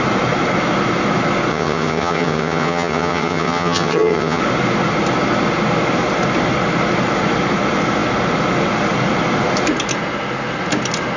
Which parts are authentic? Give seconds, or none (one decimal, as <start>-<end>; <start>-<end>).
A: 0.0-1.5; 4.4-11.2